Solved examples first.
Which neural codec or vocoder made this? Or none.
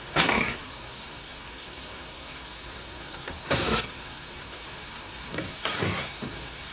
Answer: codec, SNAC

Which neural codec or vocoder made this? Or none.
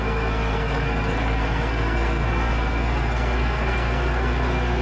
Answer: codec, SNAC